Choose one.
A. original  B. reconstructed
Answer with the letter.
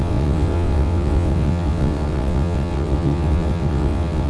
B